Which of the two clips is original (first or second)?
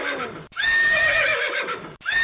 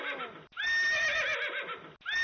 second